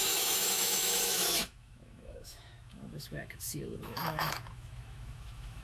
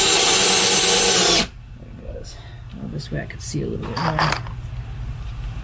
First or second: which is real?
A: second